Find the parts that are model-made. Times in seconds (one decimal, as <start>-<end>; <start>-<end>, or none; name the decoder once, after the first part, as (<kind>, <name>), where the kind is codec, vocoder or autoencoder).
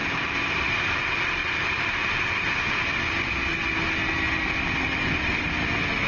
none